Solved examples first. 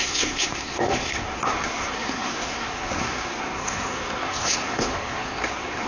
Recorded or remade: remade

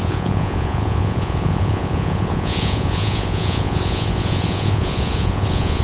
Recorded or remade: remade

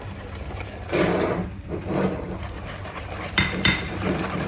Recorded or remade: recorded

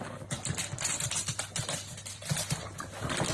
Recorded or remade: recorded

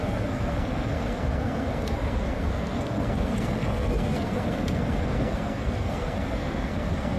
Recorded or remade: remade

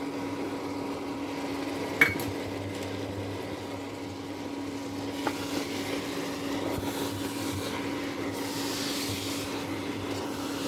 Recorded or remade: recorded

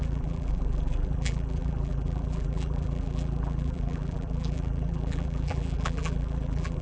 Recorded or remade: remade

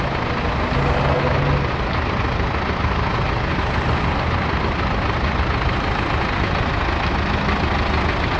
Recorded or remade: recorded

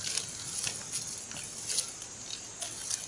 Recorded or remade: recorded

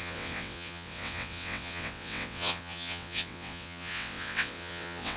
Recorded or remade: remade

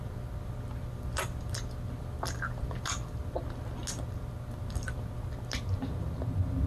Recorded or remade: recorded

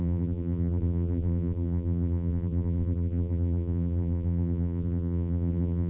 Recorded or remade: remade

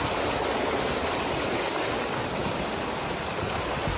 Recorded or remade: recorded